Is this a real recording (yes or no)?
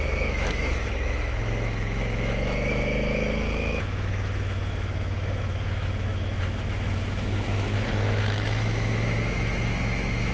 no